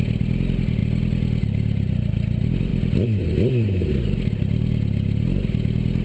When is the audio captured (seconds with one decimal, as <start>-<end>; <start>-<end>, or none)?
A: 0.0-6.0